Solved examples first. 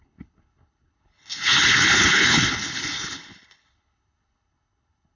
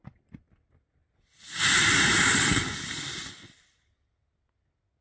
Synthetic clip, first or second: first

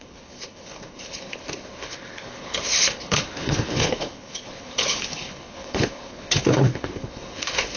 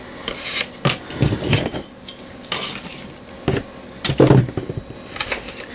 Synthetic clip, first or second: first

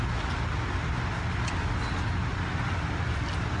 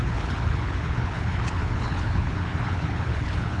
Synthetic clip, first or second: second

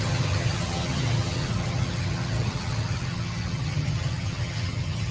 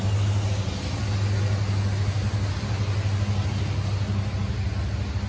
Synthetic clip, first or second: first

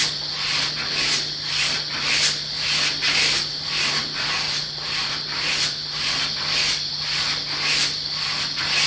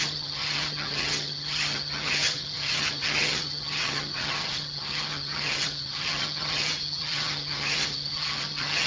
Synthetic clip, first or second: second